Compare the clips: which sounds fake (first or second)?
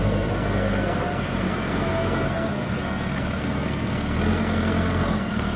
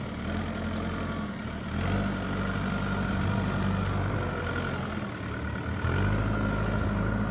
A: first